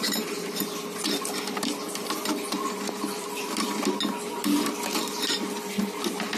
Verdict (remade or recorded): recorded